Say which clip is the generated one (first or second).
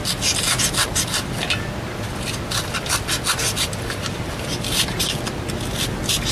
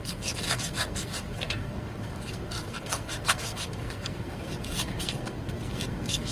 second